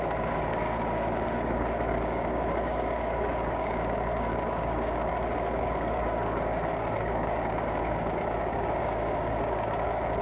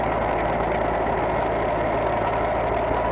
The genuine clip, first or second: second